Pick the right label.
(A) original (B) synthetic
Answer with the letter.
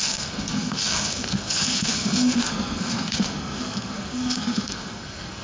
B